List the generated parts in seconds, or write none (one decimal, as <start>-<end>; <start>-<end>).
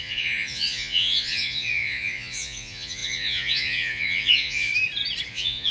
0.0-4.7; 5.3-5.7